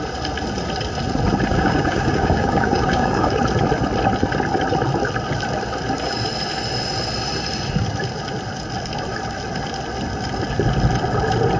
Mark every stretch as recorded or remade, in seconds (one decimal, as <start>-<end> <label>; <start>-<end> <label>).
0.0-1.5 recorded; 1.5-3.4 remade; 3.4-11.6 recorded